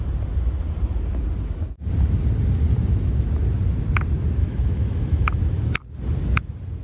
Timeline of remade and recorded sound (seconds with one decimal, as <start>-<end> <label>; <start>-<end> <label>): 0.0-4.4 recorded; 4.4-5.4 remade; 5.4-6.8 recorded